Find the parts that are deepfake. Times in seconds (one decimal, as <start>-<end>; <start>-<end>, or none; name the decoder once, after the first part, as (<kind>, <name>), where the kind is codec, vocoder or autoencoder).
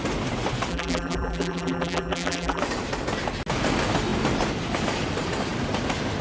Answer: 0.7-2.6 (vocoder, BigVGAN v2)